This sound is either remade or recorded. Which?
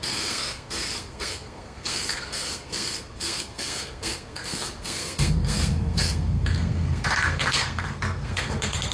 remade